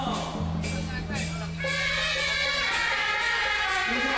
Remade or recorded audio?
recorded